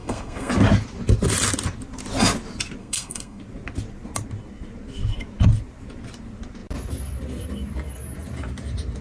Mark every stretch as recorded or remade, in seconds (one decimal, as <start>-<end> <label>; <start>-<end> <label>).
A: 0.0-0.5 remade; 0.5-2.8 recorded; 2.8-3.4 remade; 3.4-9.0 recorded